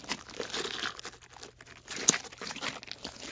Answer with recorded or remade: recorded